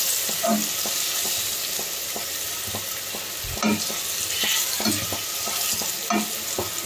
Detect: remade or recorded recorded